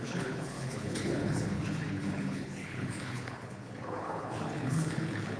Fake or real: fake